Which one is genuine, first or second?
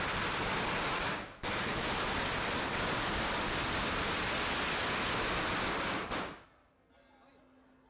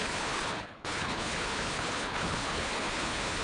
first